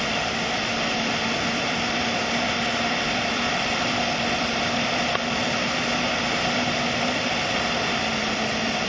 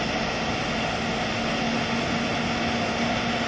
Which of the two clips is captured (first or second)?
second